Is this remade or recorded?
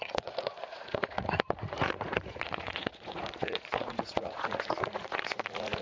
remade